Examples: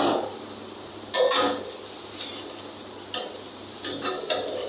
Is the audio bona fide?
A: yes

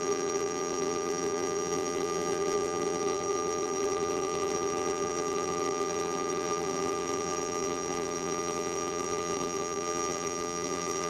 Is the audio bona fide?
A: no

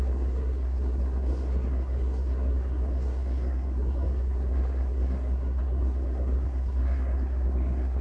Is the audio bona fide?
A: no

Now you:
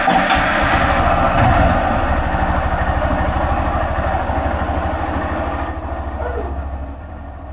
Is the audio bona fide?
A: yes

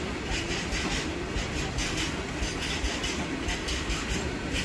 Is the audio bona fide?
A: yes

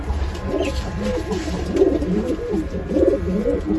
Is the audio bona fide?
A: no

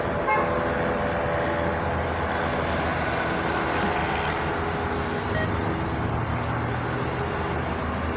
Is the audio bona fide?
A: yes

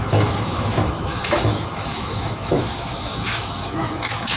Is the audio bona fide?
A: no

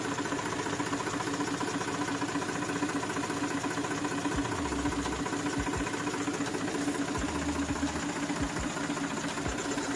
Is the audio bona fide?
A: yes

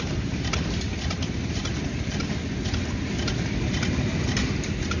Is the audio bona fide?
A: yes